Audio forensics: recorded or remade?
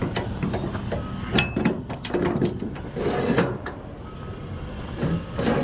recorded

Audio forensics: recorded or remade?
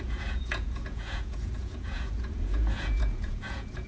remade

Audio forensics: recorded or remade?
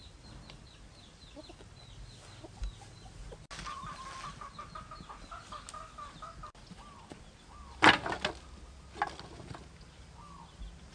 recorded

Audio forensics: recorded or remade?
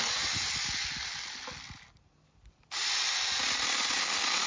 recorded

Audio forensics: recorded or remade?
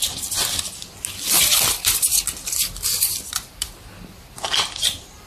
recorded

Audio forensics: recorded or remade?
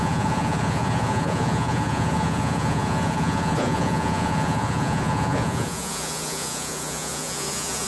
remade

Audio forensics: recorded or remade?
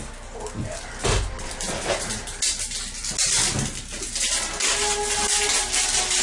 recorded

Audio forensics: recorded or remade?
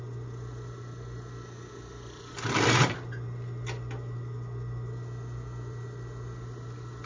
recorded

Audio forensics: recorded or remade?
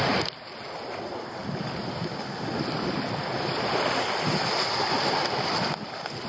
recorded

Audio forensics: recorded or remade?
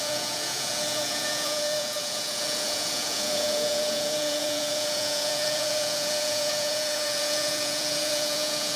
remade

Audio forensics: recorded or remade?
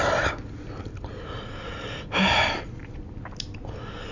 recorded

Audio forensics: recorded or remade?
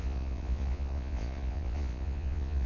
remade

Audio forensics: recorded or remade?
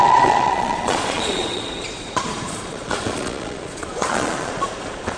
remade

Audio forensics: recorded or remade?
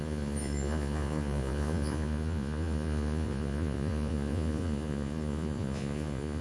remade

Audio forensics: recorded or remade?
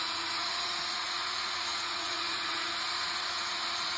remade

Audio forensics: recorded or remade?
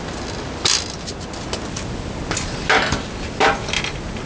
recorded